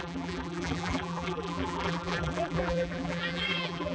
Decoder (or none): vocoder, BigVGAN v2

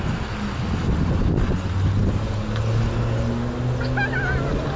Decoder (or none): none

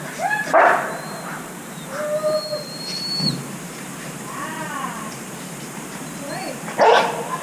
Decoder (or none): vocoder, BigVGAN v2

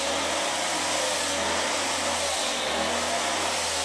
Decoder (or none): none